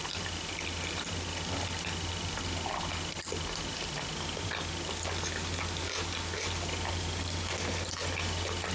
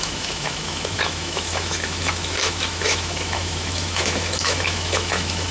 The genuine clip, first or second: first